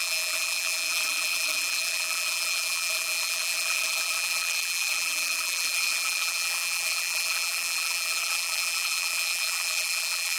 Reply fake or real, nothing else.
fake